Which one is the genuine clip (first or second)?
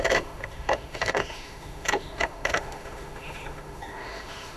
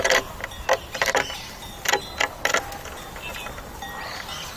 second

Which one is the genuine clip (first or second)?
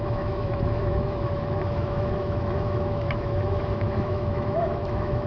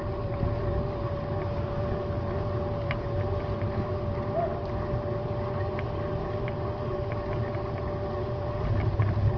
second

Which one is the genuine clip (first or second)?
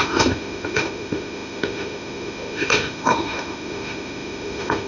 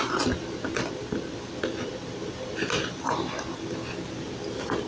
second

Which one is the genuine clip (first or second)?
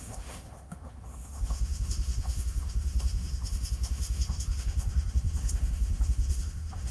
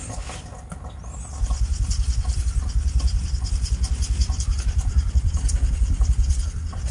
second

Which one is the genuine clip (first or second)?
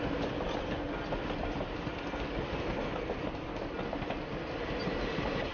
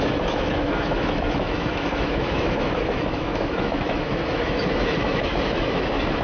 first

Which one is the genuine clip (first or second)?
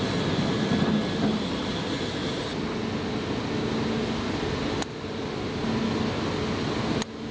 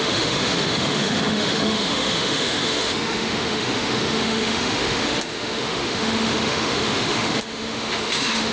first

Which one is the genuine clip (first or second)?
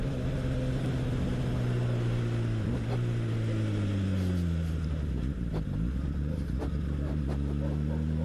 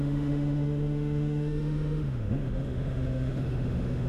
first